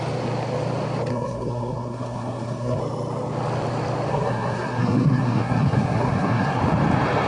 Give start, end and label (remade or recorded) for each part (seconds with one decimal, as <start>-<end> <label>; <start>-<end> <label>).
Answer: 0.0-1.1 recorded; 1.1-2.8 remade; 2.8-4.1 recorded; 4.1-6.6 remade; 6.6-7.3 recorded